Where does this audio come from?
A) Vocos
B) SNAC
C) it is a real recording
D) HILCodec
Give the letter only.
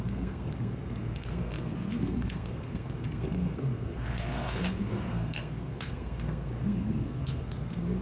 B